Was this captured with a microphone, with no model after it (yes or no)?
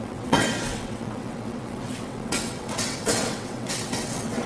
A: no